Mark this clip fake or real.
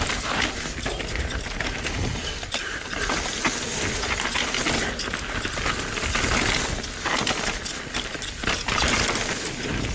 real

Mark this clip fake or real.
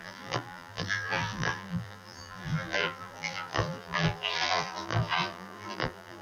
fake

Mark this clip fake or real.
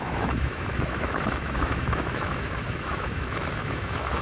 fake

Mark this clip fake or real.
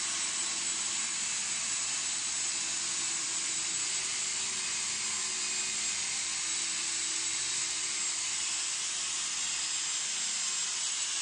real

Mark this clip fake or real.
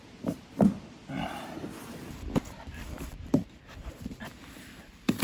fake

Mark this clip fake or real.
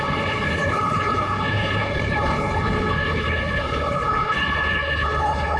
fake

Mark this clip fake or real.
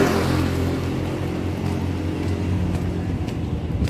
real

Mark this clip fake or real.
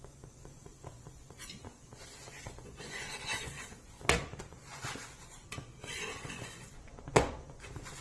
fake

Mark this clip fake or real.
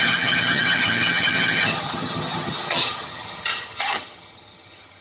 fake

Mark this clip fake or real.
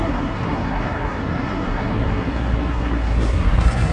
fake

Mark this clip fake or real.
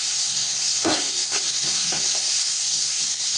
fake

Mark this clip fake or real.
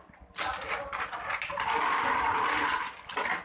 real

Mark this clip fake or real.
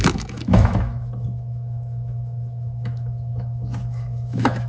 fake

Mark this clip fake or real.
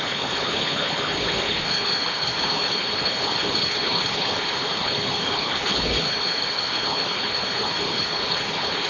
fake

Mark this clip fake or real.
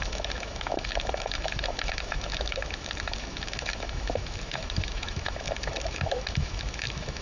fake